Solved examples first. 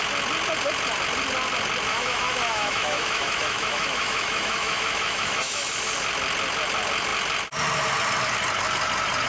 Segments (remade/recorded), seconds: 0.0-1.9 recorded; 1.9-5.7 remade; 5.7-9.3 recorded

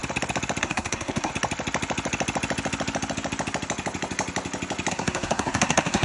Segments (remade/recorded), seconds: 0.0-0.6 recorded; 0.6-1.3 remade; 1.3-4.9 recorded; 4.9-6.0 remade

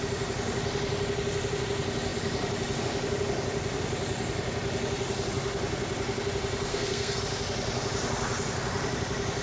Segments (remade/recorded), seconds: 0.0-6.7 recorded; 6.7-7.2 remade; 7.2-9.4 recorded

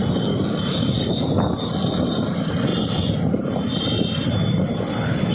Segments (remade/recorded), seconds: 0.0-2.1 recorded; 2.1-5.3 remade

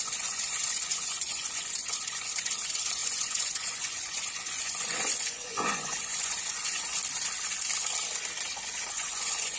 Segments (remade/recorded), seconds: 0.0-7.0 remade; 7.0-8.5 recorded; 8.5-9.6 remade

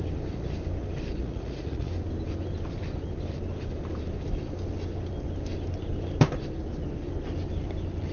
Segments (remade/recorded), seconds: 0.0-1.2 recorded; 1.2-1.9 remade; 1.9-8.1 recorded

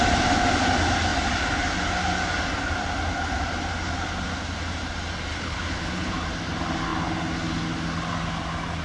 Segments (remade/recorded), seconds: 0.0-5.3 recorded; 5.3-6.1 remade; 6.1-8.8 recorded